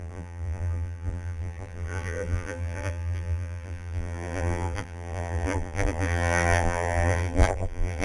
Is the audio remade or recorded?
remade